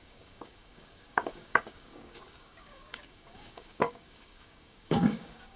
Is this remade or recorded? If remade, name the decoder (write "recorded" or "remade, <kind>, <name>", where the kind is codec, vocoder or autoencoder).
remade, codec, DAC